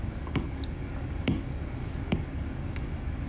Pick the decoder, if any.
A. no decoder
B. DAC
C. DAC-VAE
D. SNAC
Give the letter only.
B